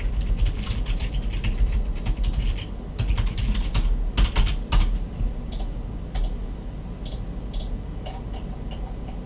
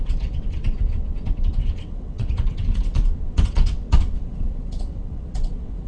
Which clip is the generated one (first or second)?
second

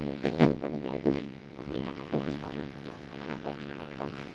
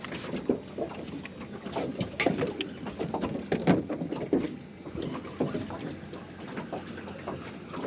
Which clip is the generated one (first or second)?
first